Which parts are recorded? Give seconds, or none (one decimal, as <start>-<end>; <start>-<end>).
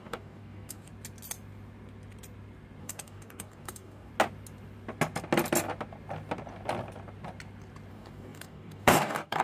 0.9-2.8; 4.1-7.9